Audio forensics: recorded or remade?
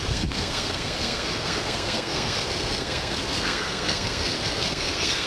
remade